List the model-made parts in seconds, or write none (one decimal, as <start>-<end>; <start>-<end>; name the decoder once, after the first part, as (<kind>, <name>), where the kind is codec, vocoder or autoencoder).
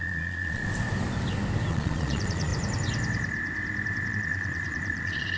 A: 0.0-0.6 (vocoder, Vocos); 1.7-2.5; 4.1-5.4